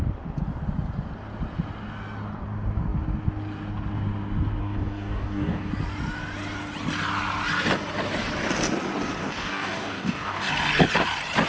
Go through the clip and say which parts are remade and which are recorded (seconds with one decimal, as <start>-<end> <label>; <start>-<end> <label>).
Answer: 0.0-4.6 recorded; 4.6-5.7 remade; 5.7-9.2 recorded; 9.2-10.5 remade; 10.5-11.5 recorded